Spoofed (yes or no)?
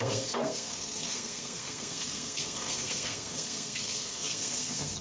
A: yes